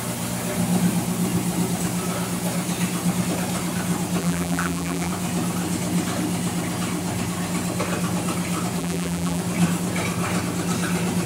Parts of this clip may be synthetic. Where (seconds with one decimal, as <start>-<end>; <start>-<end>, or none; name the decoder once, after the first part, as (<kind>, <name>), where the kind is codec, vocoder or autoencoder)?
4.2-5.1 (vocoder, BigVGAN v2); 8.8-9.4